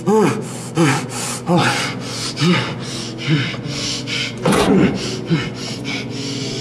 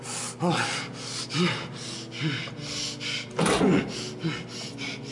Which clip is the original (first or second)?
second